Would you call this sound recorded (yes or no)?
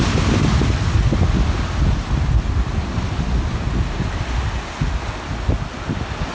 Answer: yes